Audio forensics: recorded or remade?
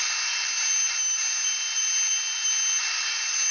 recorded